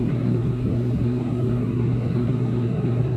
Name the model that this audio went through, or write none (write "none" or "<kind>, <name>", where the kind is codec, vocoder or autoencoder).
codec, SNAC